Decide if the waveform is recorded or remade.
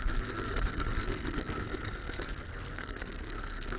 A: remade